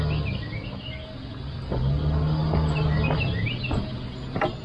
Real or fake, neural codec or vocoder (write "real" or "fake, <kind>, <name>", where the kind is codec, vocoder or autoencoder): real